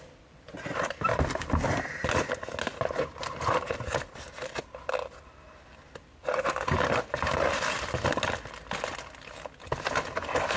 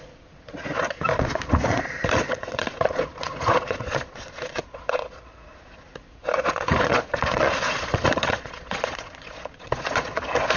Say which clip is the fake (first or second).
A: second